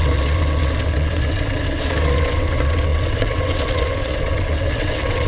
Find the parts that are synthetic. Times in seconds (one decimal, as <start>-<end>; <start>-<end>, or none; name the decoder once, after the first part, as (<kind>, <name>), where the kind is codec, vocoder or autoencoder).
0.0-5.3 (vocoder, WaveNeXt)